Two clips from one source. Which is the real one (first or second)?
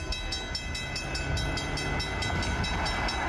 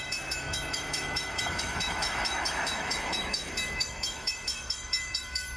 first